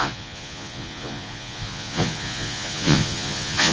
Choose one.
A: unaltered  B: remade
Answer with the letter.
B